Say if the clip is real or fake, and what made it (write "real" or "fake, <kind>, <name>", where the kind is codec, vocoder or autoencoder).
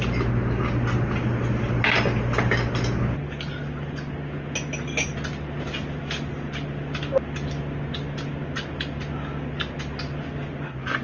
real